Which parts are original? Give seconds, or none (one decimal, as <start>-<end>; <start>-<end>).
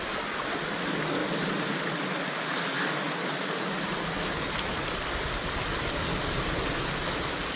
0.0-7.6